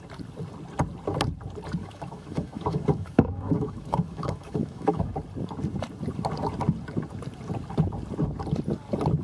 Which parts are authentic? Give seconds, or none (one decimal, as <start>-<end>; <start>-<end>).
0.0-1.8; 5.1-9.2